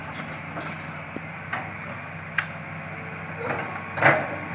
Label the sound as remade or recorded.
recorded